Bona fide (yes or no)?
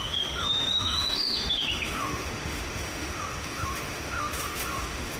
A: no